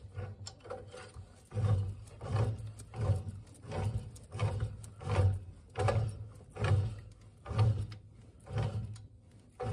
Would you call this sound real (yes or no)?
yes